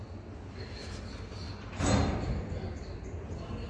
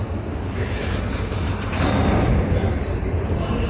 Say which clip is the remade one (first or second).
second